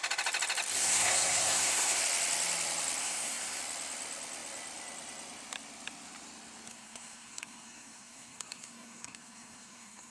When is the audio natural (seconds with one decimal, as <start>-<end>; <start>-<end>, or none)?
0.0-0.8; 2.0-3.0; 3.6-6.7